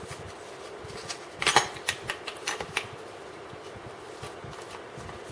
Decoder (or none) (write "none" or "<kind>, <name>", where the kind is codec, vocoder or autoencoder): none